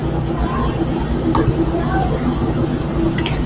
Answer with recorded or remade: recorded